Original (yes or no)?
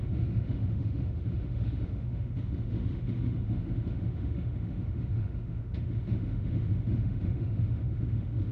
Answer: no